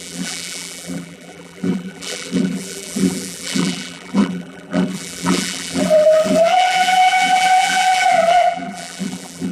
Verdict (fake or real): fake